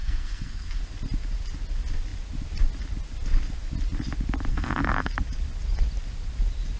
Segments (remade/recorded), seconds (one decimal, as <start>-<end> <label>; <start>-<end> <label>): 0.0-0.8 remade; 0.8-4.5 recorded; 4.5-5.1 remade; 5.1-6.8 recorded